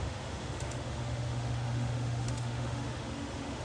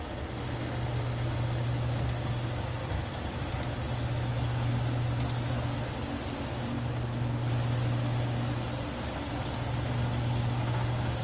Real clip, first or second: second